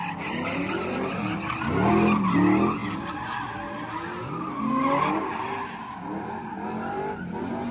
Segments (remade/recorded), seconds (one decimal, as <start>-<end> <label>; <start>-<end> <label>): 0.0-7.7 recorded